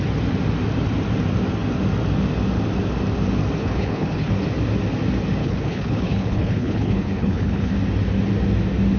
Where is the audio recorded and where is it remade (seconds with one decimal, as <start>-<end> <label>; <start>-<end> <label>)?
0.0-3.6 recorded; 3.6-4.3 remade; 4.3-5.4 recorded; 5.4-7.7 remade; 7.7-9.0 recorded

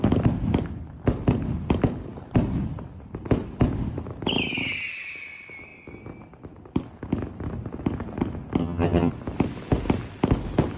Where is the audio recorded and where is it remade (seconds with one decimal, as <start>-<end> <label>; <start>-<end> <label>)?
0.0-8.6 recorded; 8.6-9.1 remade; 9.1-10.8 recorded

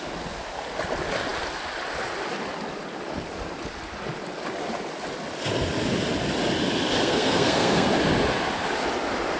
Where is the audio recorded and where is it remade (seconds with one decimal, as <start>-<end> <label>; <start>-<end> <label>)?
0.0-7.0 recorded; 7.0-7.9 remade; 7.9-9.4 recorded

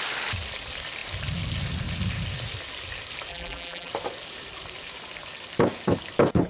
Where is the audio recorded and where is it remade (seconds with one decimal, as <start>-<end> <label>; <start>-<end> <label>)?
0.0-3.3 recorded; 3.3-3.9 remade; 3.9-6.5 recorded

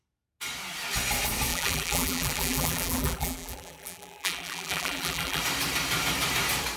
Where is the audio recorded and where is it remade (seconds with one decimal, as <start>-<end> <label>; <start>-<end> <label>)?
0.0-1.5 recorded; 1.5-5.4 remade; 5.4-6.8 recorded

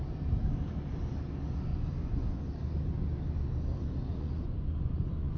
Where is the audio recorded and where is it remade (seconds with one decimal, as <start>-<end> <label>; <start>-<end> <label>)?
0.0-1.7 recorded; 1.7-2.4 remade; 2.4-4.1 recorded; 4.1-5.4 remade